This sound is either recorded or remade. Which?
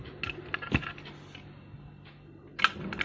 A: recorded